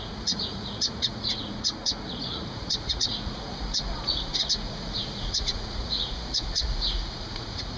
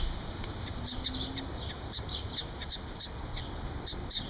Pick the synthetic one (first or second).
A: first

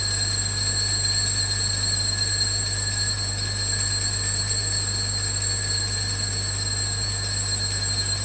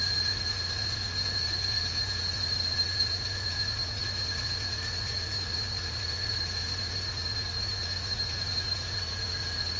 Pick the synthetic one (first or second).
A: second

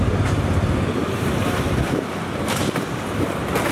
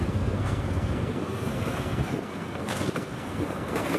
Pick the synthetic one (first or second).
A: second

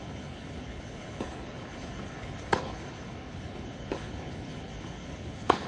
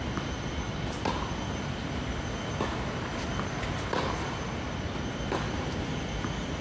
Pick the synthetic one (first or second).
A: first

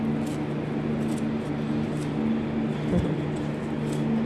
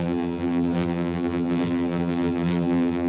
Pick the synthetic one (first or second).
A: second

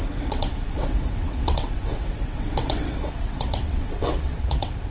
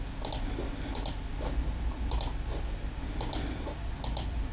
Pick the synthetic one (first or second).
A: first